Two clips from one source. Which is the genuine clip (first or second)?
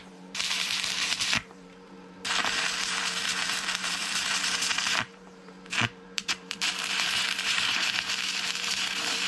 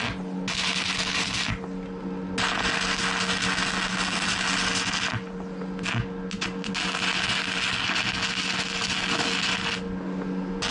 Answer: second